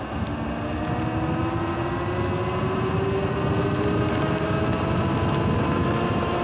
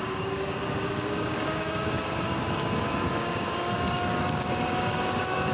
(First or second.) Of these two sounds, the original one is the first